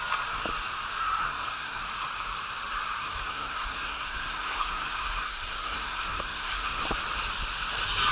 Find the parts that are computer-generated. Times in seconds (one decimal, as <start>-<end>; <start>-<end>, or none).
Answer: 1.2-1.8; 3.0-6.8